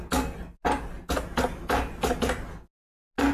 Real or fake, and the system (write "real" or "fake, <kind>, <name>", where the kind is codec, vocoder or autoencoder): real